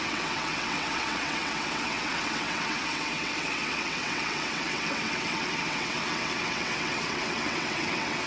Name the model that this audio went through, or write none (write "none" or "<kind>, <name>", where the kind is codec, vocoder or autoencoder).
vocoder, WaveNeXt